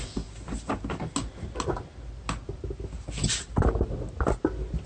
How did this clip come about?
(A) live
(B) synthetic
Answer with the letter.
A